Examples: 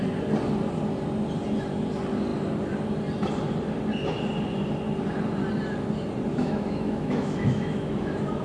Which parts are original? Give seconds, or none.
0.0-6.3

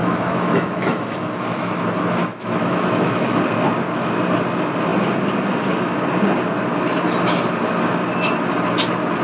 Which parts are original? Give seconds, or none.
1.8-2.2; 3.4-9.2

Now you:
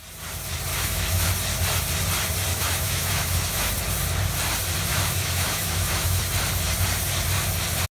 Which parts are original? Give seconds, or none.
0.0-0.7; 1.3-2.5; 3.7-4.9; 6.2-8.0